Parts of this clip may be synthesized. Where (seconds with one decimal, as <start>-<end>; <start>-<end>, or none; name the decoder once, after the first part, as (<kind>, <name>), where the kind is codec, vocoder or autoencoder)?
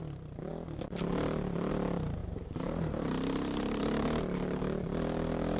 2.2-3.8 (vocoder, BigVGAN v2)